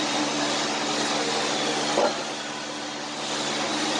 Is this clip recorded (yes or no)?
yes